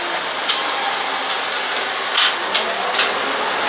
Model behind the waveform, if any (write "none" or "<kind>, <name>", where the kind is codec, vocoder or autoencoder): none